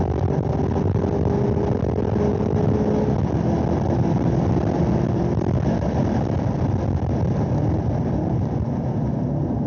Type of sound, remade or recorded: recorded